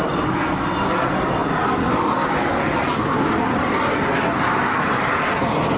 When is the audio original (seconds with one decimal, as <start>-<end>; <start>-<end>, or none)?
0.0-5.8